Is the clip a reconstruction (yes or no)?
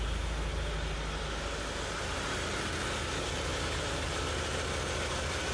no